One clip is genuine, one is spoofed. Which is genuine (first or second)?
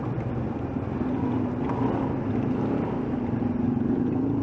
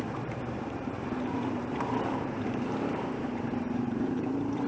first